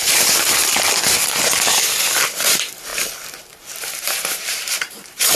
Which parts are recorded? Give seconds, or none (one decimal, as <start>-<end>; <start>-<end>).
0.6-2.2; 2.9-3.4